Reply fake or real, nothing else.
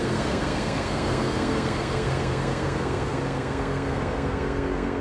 fake